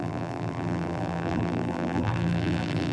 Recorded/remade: remade